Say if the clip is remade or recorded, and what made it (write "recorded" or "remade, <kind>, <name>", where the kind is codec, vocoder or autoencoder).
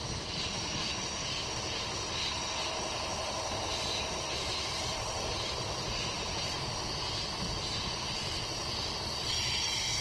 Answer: recorded